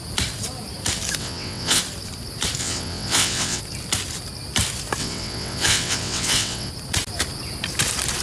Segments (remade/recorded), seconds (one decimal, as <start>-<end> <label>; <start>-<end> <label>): 0.0-1.2 recorded; 1.2-1.8 remade; 1.8-2.6 recorded; 2.6-3.6 remade; 3.6-5.0 recorded; 5.0-6.7 remade; 6.7-8.2 recorded